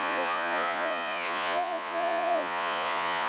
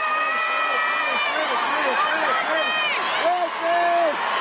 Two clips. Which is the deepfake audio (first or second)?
first